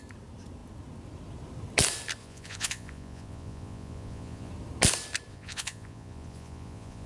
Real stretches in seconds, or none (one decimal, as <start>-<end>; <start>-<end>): 0.0-2.2; 4.5-5.3